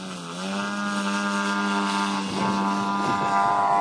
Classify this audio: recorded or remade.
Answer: recorded